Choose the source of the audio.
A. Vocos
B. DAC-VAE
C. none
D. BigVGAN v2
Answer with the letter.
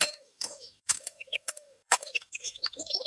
B